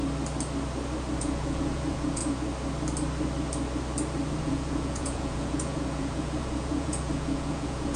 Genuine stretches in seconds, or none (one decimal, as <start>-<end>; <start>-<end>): 0.0-1.2; 2.2-4.3